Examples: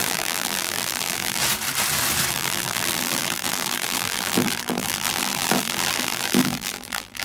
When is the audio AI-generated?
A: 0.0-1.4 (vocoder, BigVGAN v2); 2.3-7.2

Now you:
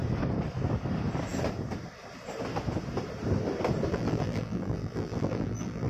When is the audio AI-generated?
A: 3.9-5.9 (vocoder, BigVGAN v2)

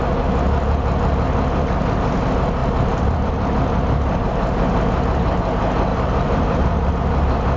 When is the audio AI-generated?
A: 2.6-3.3 (vocoder, BigVGAN v2); 5.9-6.9

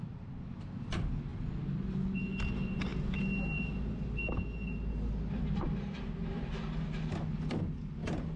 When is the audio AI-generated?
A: none

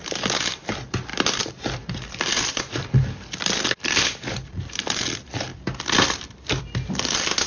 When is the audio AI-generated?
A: 0.0-7.5 (vocoder, BigVGAN v2)

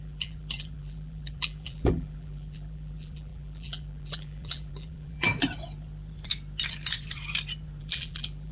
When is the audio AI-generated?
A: 0.0-5.3 (vocoder, BigVGAN v2); 7.8-8.5

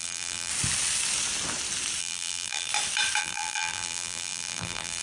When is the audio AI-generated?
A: 0.0-0.5 (vocoder, BigVGAN v2); 2.0-2.7; 3.2-5.0